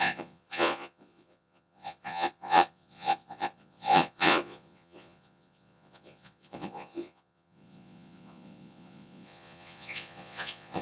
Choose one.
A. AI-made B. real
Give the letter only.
A